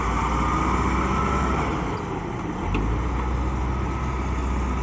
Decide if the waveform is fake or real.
real